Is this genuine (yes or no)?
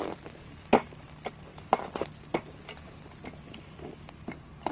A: yes